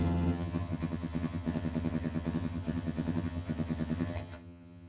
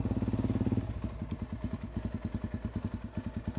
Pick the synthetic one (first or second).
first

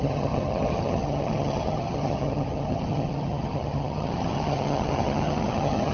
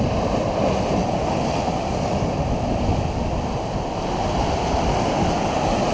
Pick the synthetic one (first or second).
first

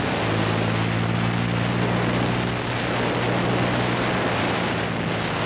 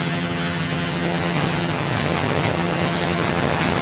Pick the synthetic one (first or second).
second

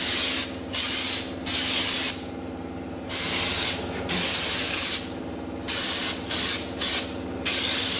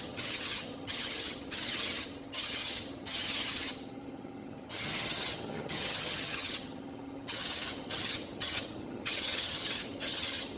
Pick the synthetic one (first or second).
second